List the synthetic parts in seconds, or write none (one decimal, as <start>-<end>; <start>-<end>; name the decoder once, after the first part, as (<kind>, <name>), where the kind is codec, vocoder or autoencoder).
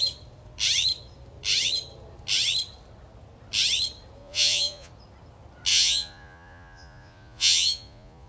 4.2-4.9 (vocoder, Vocos); 5.7-8.3